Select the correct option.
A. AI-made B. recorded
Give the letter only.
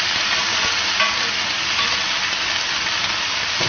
B